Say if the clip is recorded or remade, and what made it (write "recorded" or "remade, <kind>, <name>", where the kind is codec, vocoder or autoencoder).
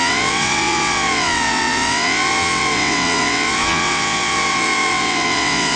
remade, vocoder, WaveNeXt